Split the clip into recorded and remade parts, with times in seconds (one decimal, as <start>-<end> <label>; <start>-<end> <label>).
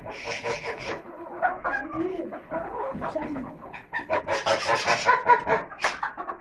0.0-1.5 remade; 1.5-2.1 recorded; 2.1-4.2 remade; 4.2-6.4 recorded